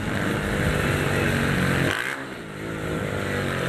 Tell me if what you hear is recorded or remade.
recorded